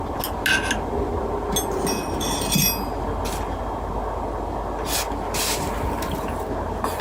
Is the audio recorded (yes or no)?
yes